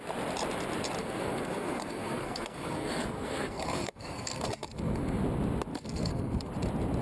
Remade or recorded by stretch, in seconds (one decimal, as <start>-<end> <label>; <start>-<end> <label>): 0.0-1.0 recorded; 1.0-5.2 remade; 5.2-5.7 recorded; 5.7-6.5 remade; 6.5-7.0 recorded